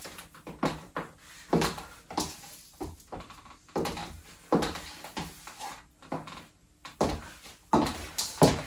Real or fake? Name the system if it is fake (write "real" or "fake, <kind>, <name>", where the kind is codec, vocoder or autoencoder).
real